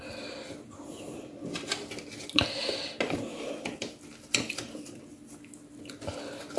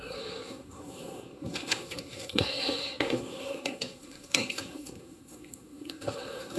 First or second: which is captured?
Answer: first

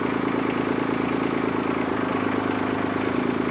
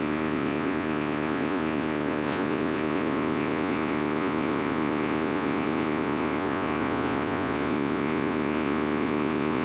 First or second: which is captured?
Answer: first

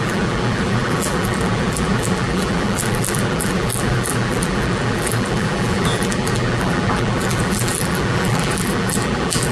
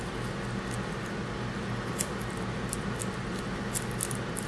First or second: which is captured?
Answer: second